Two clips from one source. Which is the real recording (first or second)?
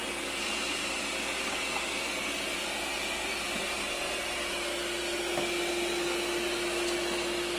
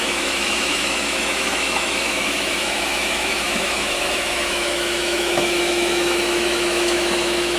first